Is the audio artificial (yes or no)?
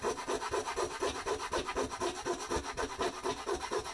no